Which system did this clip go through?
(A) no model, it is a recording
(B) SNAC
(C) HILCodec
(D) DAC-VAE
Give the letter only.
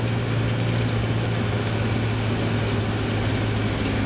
A